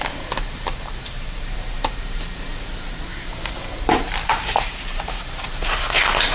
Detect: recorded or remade remade